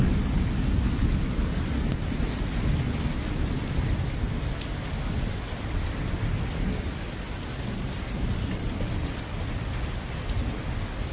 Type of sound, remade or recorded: recorded